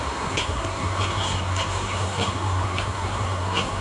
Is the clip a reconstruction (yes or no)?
yes